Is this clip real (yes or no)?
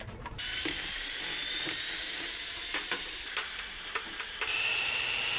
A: no